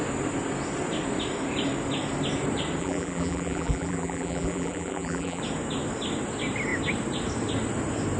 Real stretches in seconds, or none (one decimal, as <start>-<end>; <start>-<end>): 0.0-2.8; 5.4-8.2